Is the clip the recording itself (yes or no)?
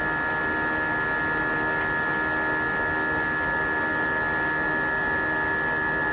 yes